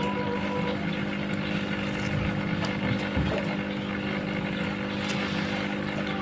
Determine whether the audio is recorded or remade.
recorded